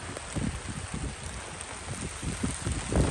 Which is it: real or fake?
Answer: real